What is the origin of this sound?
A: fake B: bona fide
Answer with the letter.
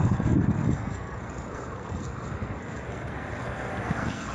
A